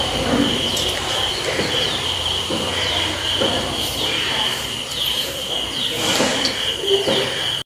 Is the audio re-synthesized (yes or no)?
yes